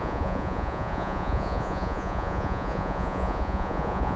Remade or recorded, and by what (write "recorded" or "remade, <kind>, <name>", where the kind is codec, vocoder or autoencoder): remade, vocoder, Vocos